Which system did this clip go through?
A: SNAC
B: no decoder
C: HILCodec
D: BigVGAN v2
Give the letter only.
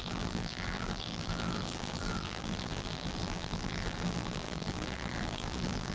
D